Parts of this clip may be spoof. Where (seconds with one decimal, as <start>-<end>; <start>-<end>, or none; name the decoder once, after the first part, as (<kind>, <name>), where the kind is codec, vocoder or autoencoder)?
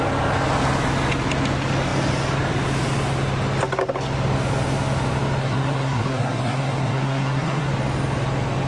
5.4-7.7 (codec, SNAC)